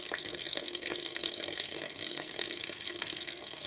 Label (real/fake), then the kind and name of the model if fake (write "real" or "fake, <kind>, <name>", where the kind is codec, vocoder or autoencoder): fake, codec, SNAC